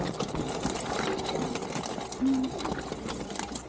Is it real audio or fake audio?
real